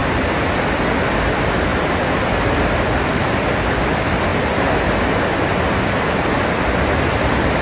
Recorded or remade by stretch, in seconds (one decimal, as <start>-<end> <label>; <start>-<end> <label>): 0.0-7.6 recorded